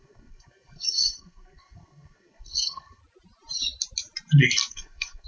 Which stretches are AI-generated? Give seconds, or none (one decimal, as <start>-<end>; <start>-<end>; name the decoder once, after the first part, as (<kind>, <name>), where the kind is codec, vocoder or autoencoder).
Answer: 0.0-3.0 (codec, SNAC); 4.7-5.3